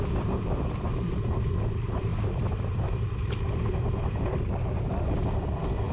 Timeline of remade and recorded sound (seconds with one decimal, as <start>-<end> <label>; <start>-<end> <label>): 0.0-5.9 remade

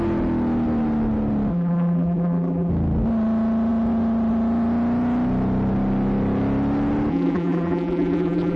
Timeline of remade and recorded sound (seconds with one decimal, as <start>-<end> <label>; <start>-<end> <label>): 0.0-1.5 recorded; 1.5-2.7 remade; 2.7-7.1 recorded; 7.1-8.6 remade

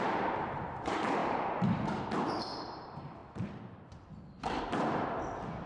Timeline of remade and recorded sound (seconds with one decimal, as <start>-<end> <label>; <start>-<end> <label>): 0.0-3.2 remade; 3.2-4.6 recorded; 4.6-5.7 remade

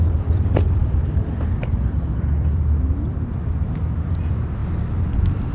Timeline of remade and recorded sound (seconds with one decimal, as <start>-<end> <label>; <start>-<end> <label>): 0.0-4.6 remade; 4.6-5.1 recorded; 5.1-5.5 remade

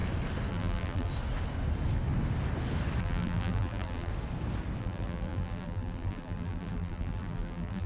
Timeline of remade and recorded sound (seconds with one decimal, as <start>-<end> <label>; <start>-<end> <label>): 0.0-0.5 recorded; 0.5-1.1 remade; 1.1-3.0 recorded; 3.0-4.1 remade; 4.1-4.8 recorded; 4.8-7.9 remade

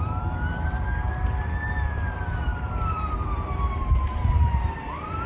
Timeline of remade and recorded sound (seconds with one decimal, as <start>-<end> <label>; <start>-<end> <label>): 0.0-5.3 remade

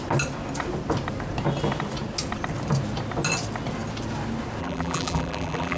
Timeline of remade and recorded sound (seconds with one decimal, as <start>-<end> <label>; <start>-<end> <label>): 0.0-4.6 recorded; 4.6-5.8 remade

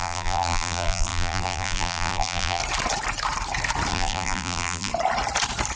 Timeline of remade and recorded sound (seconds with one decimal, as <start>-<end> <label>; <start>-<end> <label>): 0.0-2.6 remade; 2.6-3.9 recorded; 3.9-4.9 remade; 4.9-5.8 recorded